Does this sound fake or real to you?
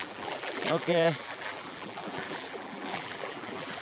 fake